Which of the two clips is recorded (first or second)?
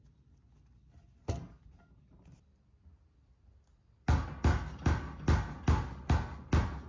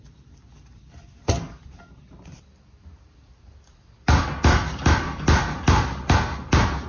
first